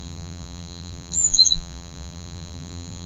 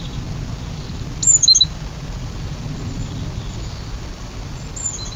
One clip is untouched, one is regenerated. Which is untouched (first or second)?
second